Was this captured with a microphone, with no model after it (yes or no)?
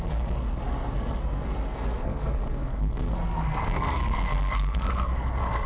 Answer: no